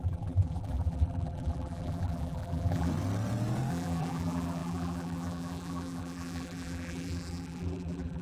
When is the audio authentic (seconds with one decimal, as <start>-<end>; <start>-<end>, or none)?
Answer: 2.9-3.7